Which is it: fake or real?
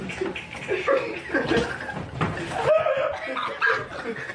real